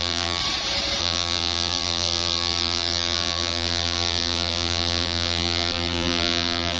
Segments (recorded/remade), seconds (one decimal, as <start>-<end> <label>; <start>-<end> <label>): 0.0-0.4 remade; 0.4-1.0 recorded; 1.0-6.8 remade